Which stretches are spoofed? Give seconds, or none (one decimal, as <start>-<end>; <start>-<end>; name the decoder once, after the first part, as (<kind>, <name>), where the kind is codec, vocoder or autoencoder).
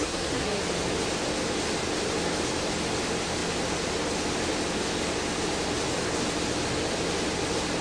0.0-0.6 (codec, SNAC)